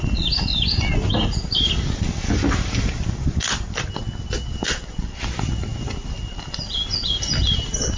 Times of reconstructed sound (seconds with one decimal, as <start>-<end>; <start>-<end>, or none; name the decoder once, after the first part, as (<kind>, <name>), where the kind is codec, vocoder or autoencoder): 0.0-0.9 (vocoder, BigVGAN v2); 5.0-5.7; 7.0-8.0